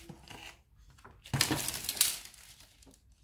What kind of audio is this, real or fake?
real